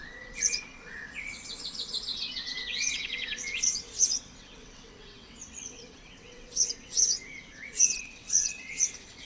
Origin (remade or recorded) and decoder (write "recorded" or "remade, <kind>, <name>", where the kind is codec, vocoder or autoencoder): remade, vocoder, WaveNeXt